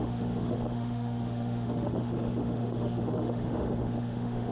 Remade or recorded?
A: remade